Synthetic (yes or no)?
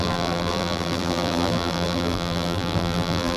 yes